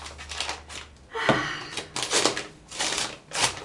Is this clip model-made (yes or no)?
no